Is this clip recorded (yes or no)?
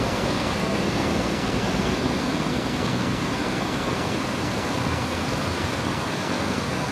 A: no